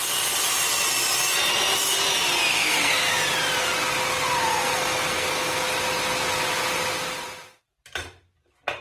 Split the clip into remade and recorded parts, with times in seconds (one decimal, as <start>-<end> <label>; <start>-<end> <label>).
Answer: 0.0-2.5 recorded; 2.5-3.1 remade; 3.1-4.5 recorded; 4.5-5.6 remade; 5.6-8.8 recorded